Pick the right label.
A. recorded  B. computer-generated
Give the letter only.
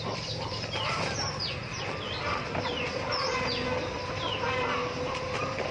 A